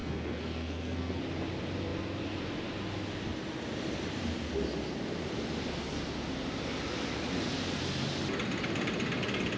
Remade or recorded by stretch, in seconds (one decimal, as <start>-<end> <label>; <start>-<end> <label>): 0.0-1.2 remade; 1.2-9.6 recorded